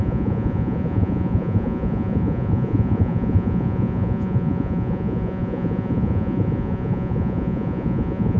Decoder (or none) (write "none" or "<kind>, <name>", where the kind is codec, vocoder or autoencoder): vocoder, Vocos